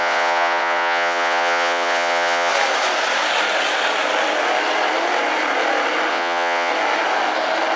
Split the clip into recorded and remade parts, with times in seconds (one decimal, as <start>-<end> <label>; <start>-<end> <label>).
0.0-2.5 remade; 2.5-6.1 recorded; 6.1-6.7 remade; 6.7-7.8 recorded